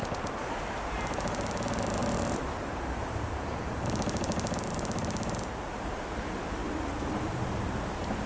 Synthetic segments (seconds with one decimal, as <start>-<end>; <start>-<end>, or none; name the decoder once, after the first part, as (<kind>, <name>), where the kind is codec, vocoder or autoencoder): 0.0-6.6 (vocoder, BigVGAN v2)